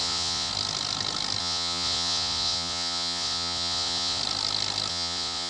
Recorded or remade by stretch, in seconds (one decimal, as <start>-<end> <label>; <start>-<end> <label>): 0.0-0.5 remade; 0.5-1.4 recorded; 1.4-4.2 remade; 4.2-4.9 recorded; 4.9-5.5 remade